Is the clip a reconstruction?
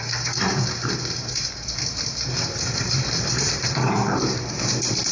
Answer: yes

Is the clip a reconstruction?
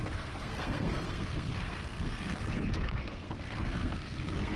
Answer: yes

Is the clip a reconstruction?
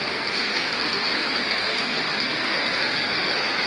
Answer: yes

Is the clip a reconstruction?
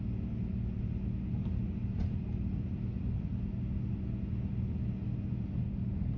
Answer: no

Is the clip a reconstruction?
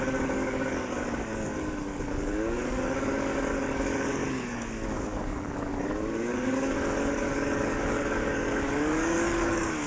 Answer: yes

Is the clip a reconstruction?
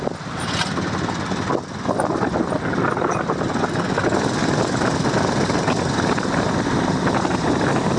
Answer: no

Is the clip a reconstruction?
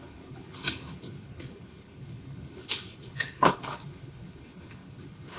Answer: yes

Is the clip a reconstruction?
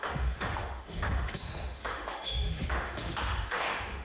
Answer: yes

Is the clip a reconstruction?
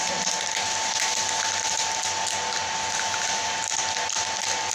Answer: no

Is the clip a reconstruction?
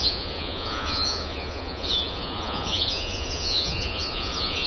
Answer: yes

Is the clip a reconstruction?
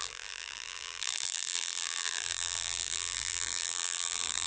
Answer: yes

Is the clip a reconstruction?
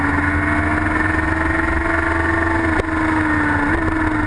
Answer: no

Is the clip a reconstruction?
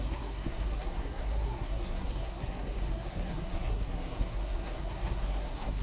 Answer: yes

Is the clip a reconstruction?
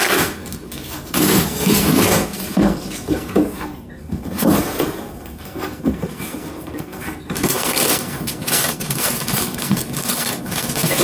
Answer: yes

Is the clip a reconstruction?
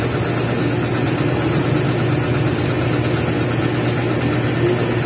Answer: no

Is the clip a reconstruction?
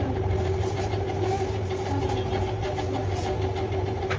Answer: no